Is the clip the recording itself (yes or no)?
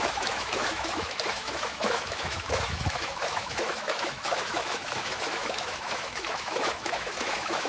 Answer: no